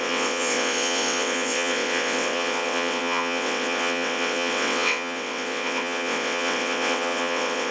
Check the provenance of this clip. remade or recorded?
remade